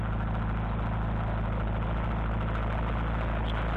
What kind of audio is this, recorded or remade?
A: recorded